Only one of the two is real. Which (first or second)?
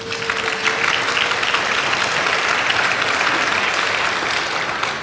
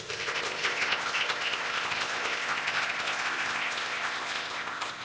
first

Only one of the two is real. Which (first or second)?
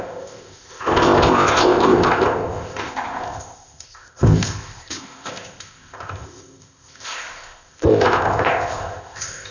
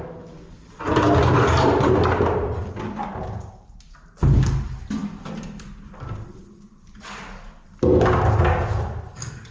second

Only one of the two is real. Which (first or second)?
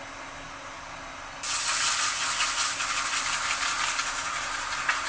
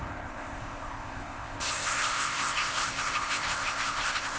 first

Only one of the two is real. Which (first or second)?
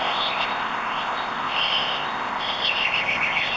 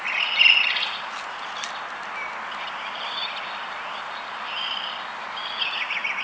second